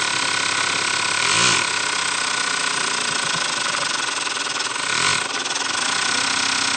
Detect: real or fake real